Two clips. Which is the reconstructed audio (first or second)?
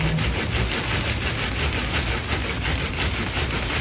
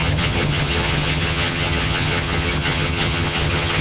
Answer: second